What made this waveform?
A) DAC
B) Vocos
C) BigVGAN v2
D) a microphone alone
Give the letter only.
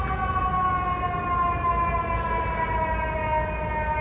D